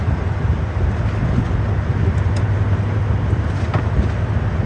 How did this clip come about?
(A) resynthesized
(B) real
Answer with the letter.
B